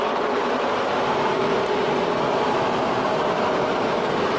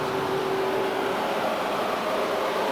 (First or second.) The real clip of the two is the second